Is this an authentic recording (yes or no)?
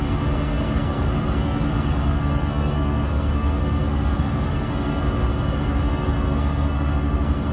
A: no